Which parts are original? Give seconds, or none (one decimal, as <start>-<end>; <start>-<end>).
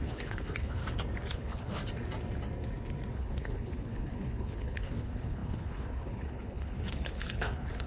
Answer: 0.8-1.3; 1.8-3.1